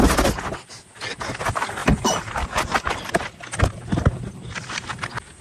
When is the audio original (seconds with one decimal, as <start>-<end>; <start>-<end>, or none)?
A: 0.0-1.8; 5.0-5.4